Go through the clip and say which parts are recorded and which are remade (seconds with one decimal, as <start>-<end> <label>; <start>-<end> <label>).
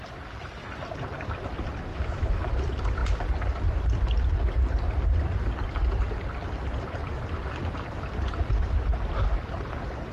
0.0-1.9 recorded; 1.9-2.5 remade; 2.5-10.1 recorded